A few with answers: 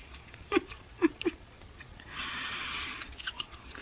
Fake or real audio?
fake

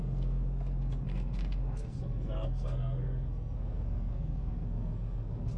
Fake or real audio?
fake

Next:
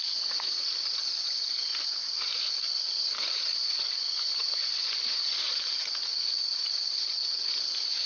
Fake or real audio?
real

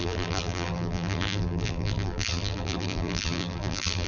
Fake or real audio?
fake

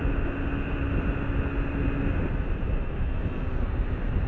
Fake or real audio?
real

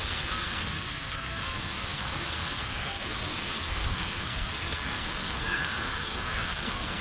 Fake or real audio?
fake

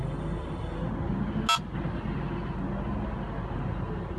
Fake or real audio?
real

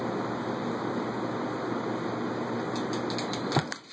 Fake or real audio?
real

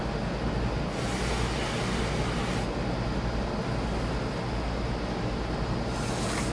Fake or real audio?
real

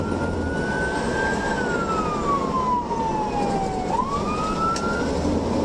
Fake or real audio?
real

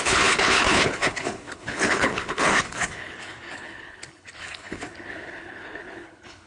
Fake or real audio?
fake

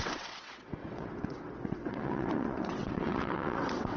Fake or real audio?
fake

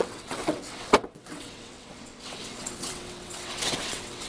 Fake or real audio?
fake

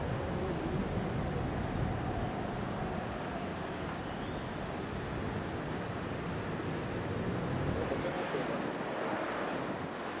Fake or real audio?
real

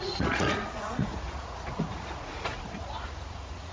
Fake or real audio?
fake